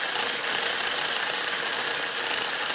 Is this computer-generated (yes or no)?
no